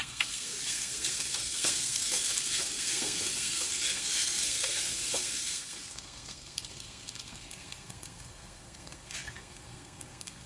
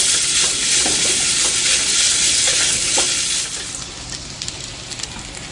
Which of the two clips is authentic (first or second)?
second